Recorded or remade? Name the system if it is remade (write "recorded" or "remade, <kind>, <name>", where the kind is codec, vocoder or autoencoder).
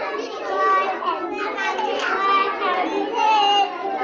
recorded